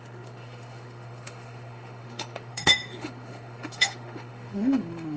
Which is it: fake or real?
fake